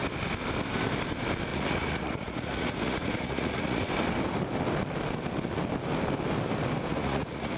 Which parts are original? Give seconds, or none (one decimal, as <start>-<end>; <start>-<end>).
0.0-1.5; 3.8-6.9